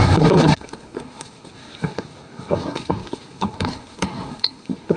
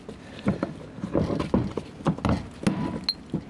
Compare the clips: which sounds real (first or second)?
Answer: second